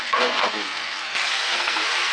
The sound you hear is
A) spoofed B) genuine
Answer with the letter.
A